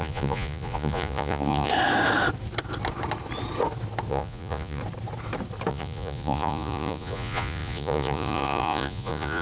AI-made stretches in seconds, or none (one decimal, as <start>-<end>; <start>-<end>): 0.0-1.7; 4.1-4.8; 5.7-9.4